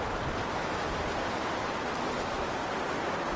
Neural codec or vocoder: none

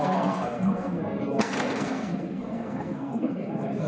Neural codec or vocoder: codec, SNAC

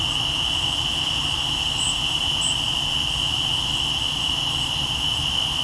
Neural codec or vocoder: none